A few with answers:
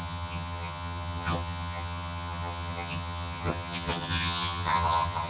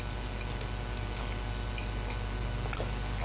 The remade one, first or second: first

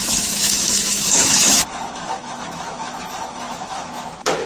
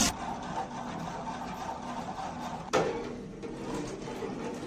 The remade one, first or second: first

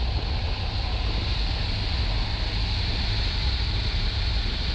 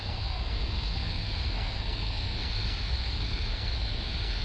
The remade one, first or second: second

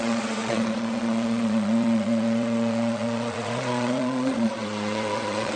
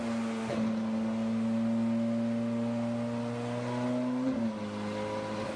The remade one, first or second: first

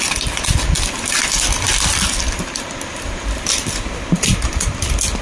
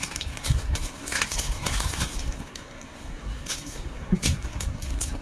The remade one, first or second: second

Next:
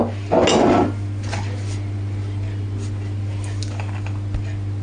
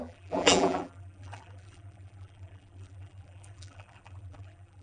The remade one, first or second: second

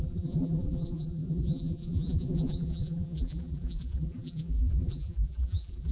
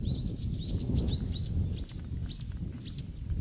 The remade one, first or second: first